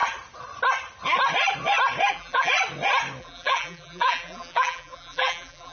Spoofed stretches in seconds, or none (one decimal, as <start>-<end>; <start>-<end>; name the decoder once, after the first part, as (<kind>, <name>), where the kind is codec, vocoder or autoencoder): 2.1-2.5 (vocoder, BigVGAN v2); 3.2-5.7